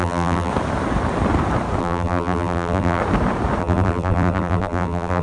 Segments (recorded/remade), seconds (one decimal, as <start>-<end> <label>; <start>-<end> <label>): 0.0-0.5 remade; 0.5-1.8 recorded; 1.8-3.0 remade; 3.0-3.6 recorded; 3.6-5.2 remade